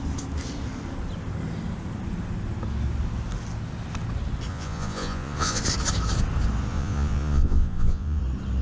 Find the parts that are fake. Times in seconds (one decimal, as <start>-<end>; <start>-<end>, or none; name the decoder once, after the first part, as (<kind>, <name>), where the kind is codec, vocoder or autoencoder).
4.5-5.6 (vocoder, Vocos); 6.7-8.2